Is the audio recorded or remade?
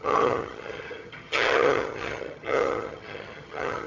remade